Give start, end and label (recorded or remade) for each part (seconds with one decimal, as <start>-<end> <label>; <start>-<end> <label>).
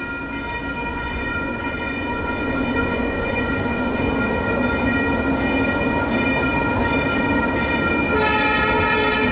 0.0-0.9 recorded; 0.9-4.1 remade; 4.1-9.3 recorded